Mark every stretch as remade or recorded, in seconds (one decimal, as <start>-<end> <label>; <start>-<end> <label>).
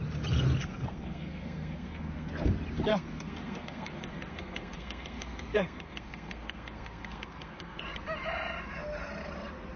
0.0-0.6 recorded; 0.6-2.3 remade; 2.3-2.9 recorded; 2.9-7.8 remade; 7.8-9.8 recorded